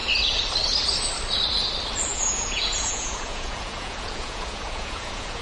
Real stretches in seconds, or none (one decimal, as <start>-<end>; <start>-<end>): 0.0-2.1